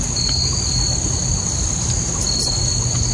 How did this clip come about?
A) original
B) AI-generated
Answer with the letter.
A